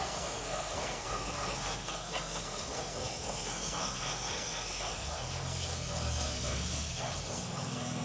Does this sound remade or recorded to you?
remade